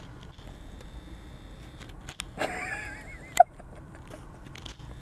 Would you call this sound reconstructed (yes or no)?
no